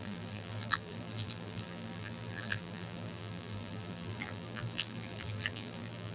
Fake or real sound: fake